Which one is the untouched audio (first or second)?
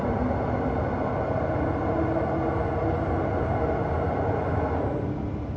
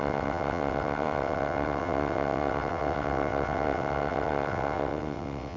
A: first